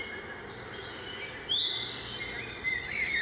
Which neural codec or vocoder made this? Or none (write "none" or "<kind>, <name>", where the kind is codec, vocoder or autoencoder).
none